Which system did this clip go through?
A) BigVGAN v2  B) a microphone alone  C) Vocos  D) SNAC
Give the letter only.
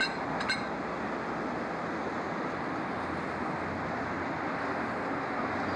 B